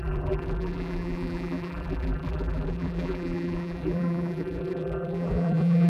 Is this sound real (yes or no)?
no